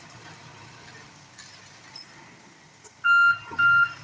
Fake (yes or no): no